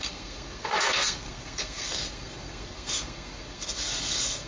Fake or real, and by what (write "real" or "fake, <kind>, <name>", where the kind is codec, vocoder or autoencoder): fake, codec, SNAC